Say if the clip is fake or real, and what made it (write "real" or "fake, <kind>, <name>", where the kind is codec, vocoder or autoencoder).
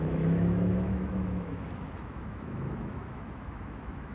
fake, autoencoder, DAC-VAE